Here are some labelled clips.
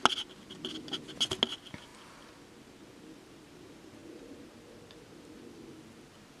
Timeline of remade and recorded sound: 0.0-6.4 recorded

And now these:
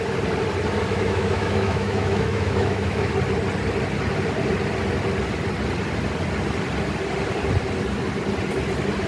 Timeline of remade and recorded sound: 0.0-0.9 recorded; 0.9-3.1 remade; 3.1-9.1 recorded

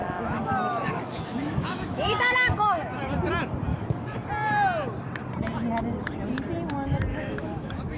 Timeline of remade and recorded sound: 0.0-3.0 remade; 3.0-3.7 recorded; 3.7-4.3 remade; 4.3-7.1 recorded; 7.1-8.0 remade

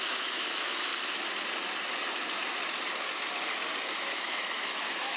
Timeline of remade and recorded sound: 0.0-0.9 remade; 0.9-4.0 recorded; 4.0-5.2 remade